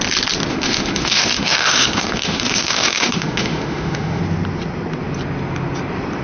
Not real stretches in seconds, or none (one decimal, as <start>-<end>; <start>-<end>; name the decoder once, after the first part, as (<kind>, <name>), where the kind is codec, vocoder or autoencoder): 0.5-4.2 (autoencoder, DAC-VAE)